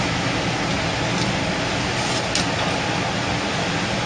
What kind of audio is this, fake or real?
real